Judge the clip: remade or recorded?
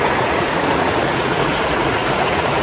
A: remade